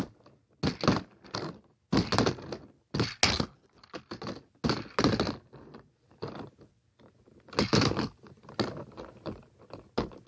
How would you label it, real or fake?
real